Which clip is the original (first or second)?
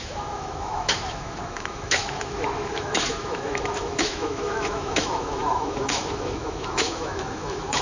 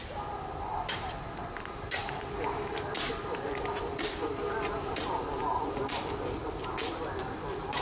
second